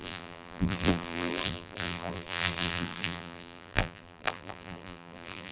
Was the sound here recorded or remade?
remade